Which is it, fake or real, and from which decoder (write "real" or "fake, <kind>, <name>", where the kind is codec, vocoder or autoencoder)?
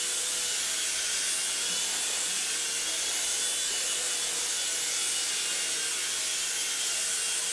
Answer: real